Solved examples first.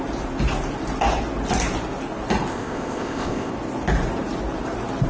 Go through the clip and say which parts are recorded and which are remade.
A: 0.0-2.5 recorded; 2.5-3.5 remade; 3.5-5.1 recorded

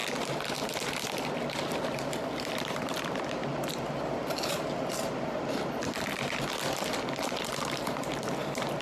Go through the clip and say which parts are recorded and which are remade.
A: 0.0-1.1 recorded; 1.1-8.8 remade

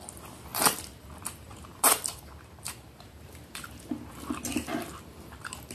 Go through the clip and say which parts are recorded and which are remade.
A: 0.0-0.5 recorded; 0.5-3.7 remade; 3.7-5.7 recorded